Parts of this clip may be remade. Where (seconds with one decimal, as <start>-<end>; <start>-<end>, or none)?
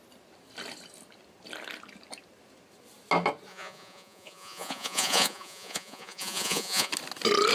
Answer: 3.5-6.9